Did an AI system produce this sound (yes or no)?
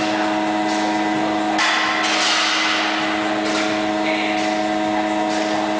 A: no